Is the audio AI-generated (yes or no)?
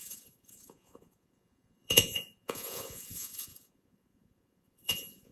yes